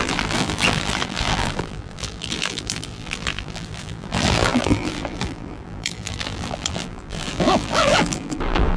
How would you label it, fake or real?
fake